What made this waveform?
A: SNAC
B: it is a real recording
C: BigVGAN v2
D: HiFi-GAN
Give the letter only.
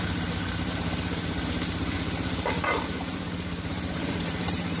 C